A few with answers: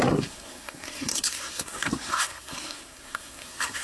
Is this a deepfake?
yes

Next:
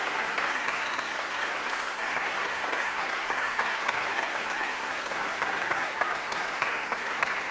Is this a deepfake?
yes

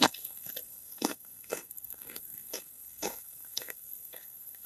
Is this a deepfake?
yes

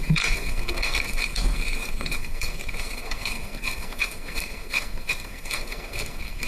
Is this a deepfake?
yes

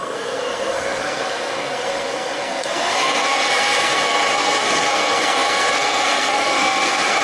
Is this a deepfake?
yes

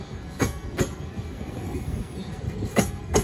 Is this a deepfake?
yes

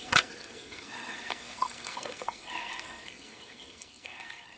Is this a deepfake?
yes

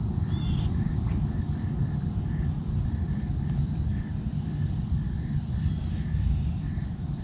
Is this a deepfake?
no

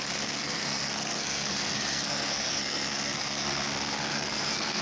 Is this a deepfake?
yes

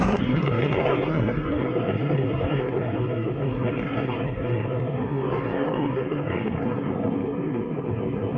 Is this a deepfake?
yes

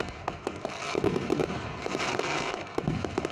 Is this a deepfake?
yes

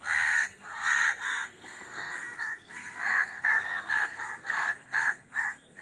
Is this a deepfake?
yes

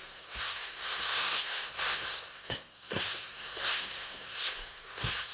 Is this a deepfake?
yes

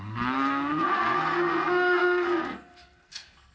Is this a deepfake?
yes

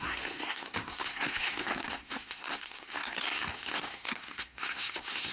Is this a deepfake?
yes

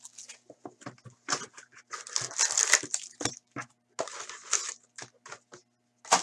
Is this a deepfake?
no